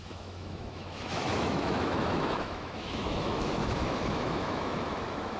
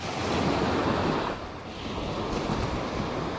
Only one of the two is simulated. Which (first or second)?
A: first